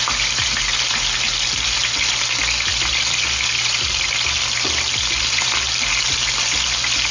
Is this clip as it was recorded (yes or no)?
yes